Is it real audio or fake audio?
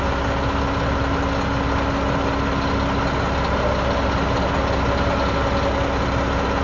real